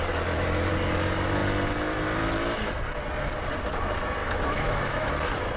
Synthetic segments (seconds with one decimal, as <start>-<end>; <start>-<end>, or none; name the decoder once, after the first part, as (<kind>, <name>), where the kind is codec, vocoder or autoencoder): 4.2-5.1 (autoencoder, DAC-VAE)